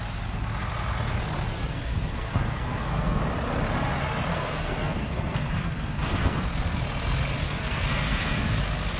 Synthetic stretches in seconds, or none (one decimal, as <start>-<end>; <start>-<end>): 1.5-3.2; 4.3-6.8; 7.4-8.6